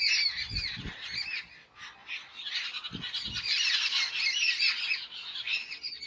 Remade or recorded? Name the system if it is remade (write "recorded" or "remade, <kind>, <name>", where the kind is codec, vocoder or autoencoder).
recorded